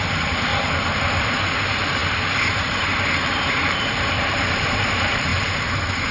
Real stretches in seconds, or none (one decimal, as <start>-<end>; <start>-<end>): 0.5-1.6